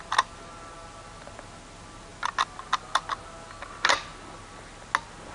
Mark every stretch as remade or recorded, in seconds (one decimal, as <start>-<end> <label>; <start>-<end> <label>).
0.0-5.3 recorded